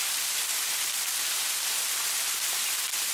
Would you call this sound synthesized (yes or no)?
yes